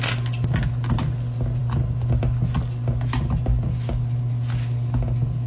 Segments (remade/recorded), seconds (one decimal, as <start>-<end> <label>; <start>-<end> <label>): 0.0-5.5 recorded